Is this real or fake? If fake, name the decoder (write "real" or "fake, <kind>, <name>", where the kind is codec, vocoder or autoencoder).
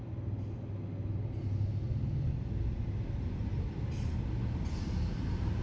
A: real